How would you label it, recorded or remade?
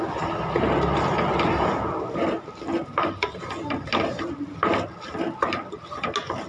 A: recorded